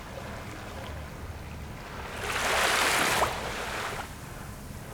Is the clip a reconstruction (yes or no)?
no